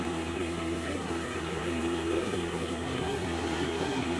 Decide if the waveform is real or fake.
fake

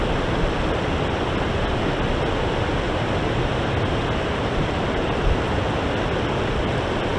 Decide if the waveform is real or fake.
real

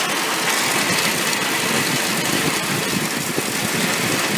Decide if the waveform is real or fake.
real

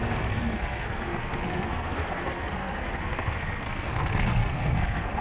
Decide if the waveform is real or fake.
fake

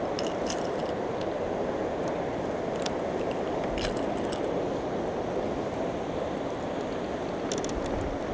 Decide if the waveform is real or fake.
real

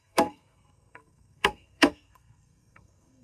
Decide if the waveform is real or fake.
fake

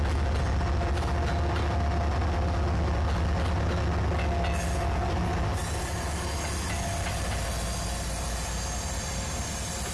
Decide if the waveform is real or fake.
real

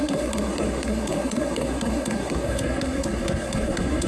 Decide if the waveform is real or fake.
fake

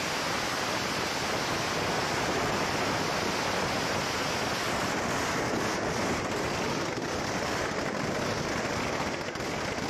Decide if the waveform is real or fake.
real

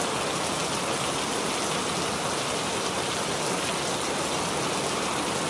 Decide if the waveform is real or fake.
real